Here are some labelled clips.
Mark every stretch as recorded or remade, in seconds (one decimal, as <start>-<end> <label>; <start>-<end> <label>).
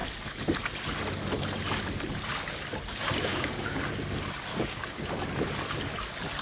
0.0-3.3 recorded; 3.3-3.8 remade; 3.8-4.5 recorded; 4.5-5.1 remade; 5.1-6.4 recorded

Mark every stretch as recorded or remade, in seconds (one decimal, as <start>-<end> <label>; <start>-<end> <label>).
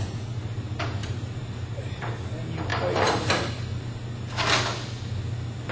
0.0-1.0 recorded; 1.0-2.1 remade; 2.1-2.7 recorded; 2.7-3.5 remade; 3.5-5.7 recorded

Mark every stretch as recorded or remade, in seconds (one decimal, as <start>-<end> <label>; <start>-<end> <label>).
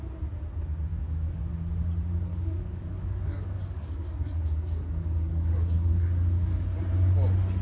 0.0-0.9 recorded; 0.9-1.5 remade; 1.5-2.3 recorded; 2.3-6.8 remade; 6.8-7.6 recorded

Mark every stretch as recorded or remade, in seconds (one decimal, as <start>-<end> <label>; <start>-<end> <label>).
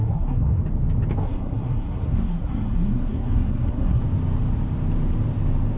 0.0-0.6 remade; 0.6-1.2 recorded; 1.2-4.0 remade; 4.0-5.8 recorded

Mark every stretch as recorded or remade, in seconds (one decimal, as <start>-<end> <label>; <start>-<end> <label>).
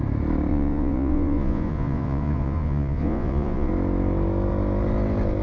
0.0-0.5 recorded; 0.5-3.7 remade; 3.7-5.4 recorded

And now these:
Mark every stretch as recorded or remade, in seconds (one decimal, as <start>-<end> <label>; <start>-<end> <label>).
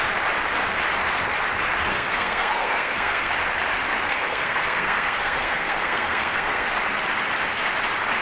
0.0-1.9 recorded; 1.9-3.3 remade; 3.3-4.1 recorded; 4.1-6.7 remade; 6.7-8.2 recorded